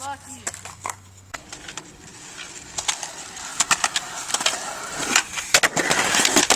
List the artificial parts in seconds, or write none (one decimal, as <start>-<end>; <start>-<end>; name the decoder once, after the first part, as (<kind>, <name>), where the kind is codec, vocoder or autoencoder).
0.7-1.4 (codec, SNAC)